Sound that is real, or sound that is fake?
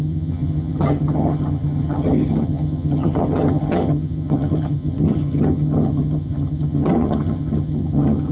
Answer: fake